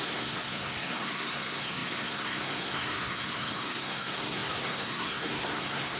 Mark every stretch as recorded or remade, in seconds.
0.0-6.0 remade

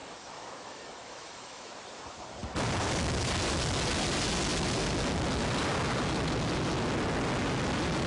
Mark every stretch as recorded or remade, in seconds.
0.0-1.7 remade; 1.7-8.1 recorded